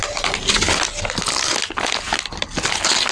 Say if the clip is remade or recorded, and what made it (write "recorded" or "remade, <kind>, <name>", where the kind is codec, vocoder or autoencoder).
recorded